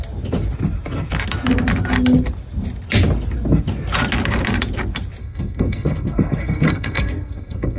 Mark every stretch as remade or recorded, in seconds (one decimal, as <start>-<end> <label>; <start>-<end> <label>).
0.0-5.2 recorded; 5.2-7.8 remade